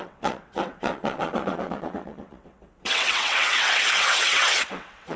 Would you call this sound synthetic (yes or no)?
yes